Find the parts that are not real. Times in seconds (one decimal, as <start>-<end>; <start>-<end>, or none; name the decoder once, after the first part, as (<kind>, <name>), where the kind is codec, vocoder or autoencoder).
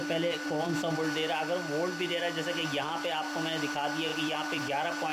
4.1-4.6 (vocoder, BigVGAN v2)